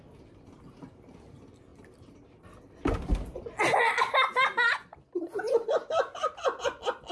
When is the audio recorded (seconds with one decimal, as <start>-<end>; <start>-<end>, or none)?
0.0-7.1